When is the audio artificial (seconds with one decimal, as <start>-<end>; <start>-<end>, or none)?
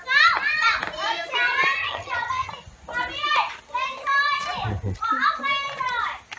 1.8-2.5